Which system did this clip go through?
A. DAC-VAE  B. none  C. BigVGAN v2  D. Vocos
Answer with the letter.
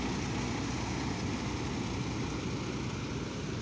B